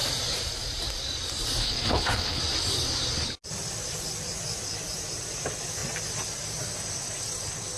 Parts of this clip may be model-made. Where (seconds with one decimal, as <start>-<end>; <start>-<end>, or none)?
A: 1.6-2.4